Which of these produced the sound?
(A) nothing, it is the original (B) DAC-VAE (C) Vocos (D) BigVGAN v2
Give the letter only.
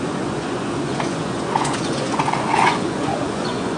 C